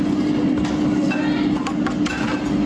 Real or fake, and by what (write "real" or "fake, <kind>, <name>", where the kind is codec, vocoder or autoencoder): real